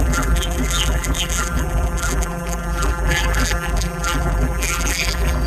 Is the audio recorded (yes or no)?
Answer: no